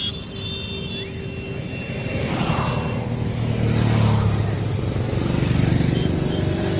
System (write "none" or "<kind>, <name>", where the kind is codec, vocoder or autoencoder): none